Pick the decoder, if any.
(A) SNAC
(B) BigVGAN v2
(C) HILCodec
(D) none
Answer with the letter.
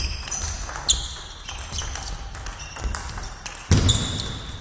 D